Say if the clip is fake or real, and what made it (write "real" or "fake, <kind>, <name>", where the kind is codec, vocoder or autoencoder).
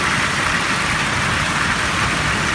real